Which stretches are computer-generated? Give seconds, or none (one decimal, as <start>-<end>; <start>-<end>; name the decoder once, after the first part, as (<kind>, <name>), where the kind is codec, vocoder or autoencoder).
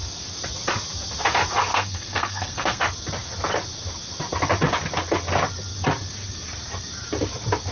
1.7-2.8 (codec, SNAC)